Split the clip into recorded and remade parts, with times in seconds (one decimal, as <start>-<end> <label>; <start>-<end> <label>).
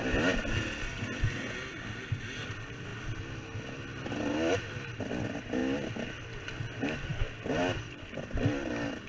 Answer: 0.0-9.1 recorded